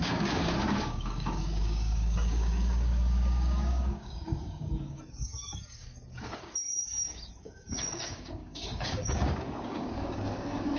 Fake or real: fake